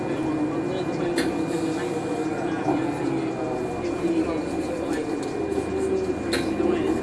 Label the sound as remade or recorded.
recorded